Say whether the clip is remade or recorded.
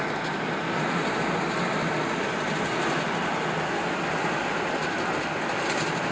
recorded